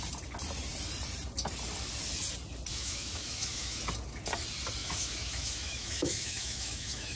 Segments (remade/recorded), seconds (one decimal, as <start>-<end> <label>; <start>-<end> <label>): 0.0-2.7 recorded; 2.7-3.8 remade; 3.8-4.8 recorded; 4.8-7.2 remade